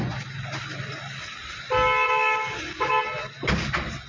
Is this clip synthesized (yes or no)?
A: no